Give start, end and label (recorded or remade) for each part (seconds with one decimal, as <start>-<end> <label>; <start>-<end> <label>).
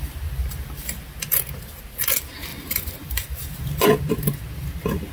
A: 0.0-2.5 recorded; 2.5-3.6 remade; 3.6-5.1 recorded